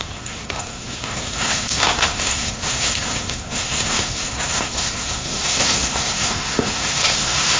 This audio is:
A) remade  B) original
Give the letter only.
A